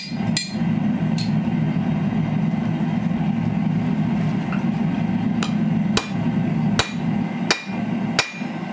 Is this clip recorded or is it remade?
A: recorded